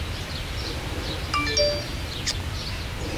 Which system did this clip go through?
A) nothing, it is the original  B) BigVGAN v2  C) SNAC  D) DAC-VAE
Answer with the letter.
A